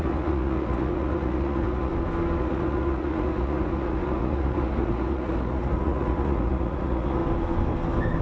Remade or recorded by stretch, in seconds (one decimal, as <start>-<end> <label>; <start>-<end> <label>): 0.0-1.9 remade; 1.9-2.4 recorded; 2.4-7.2 remade; 7.2-8.2 recorded